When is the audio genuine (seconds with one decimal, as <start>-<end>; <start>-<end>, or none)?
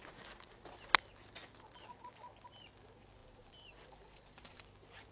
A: 0.0-3.2; 4.6-5.1